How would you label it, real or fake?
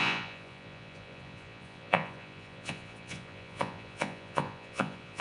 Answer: fake